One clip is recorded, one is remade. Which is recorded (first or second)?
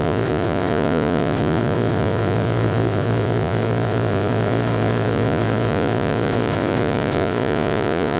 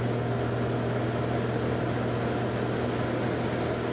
second